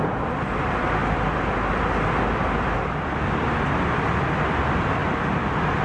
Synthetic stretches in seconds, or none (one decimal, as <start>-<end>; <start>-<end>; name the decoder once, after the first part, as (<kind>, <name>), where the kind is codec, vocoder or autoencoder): 0.0-1.0 (vocoder, BigVGAN v2); 4.5-5.0